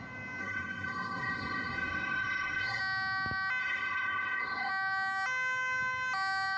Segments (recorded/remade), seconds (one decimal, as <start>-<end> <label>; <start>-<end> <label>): 0.0-0.4 recorded; 0.4-2.8 remade; 2.8-3.6 recorded; 3.6-4.7 remade; 4.7-6.6 recorded